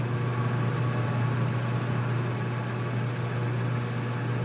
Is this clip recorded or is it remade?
recorded